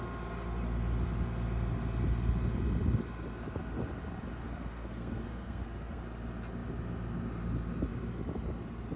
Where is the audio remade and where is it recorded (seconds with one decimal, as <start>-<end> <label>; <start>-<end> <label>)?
0.0-4.4 recorded; 4.4-6.0 remade; 6.0-9.0 recorded